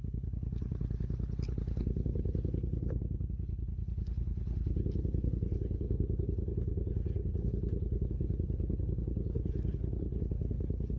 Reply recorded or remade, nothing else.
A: remade